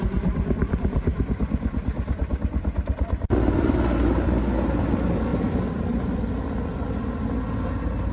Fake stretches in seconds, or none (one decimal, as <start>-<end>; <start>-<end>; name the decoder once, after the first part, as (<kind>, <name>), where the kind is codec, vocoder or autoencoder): 5.3-6.9 (vocoder, BigVGAN v2)